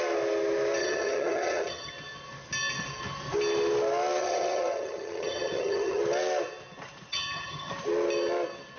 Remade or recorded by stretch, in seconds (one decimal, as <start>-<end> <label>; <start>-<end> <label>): 0.0-0.8 recorded; 0.8-1.9 remade; 1.9-4.2 recorded; 4.2-6.0 remade; 6.0-7.1 recorded; 7.1-7.7 remade; 7.7-8.8 recorded